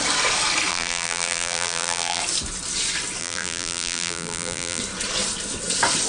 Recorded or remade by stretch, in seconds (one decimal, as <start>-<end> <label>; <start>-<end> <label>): 0.0-0.7 recorded; 0.7-2.2 remade; 2.2-3.2 recorded; 3.2-4.8 remade; 4.8-6.1 recorded